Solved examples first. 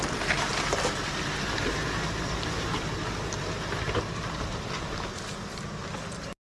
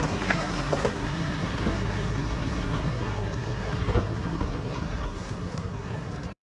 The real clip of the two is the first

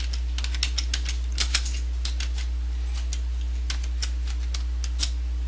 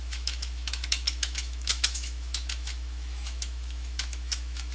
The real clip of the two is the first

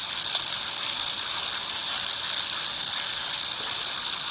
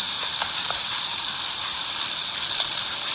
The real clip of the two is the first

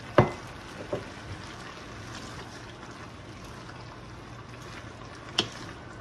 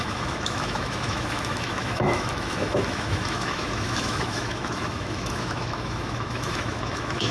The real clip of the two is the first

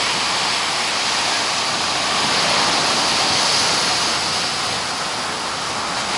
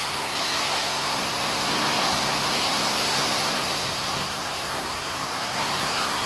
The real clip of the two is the first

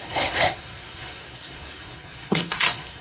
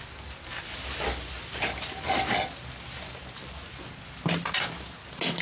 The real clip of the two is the second